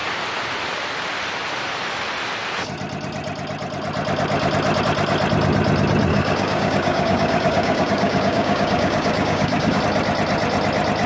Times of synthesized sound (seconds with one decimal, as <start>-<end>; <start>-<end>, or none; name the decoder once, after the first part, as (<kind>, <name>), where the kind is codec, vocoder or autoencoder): 6.1-9.8 (codec, DAC)